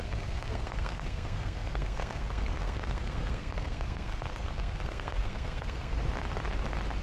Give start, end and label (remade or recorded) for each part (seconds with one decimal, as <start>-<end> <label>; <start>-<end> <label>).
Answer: 0.0-6.0 remade; 6.0-7.0 recorded